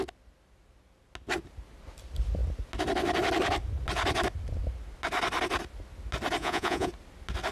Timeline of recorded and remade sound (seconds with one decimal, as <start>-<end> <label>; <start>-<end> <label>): 0.0-6.4 recorded; 6.4-6.9 remade; 6.9-7.5 recorded